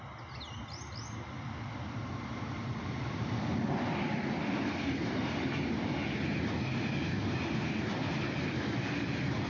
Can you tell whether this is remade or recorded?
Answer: recorded